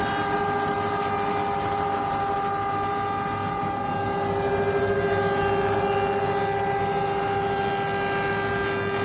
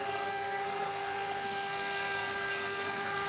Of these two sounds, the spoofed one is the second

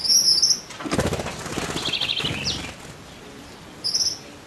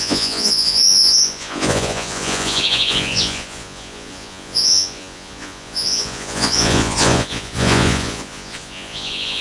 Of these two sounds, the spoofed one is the second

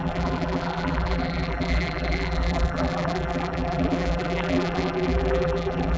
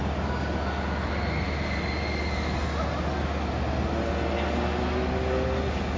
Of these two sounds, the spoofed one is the first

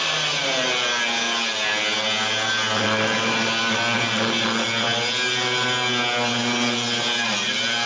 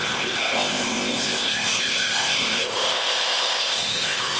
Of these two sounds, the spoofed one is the second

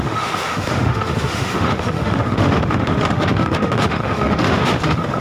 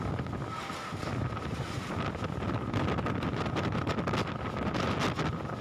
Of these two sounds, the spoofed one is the first